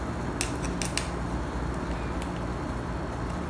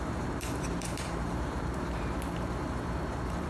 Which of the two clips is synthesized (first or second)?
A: second